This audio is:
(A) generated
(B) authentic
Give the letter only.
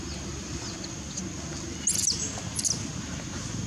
B